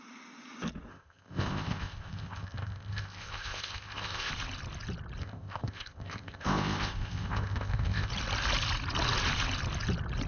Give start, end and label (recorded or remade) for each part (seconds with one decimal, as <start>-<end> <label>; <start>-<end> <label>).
0.0-0.9 recorded; 0.9-4.3 remade; 4.3-5.2 recorded; 5.2-8.1 remade; 8.1-10.3 recorded

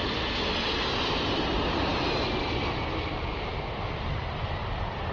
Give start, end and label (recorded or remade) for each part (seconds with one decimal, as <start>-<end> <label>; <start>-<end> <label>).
0.0-5.1 recorded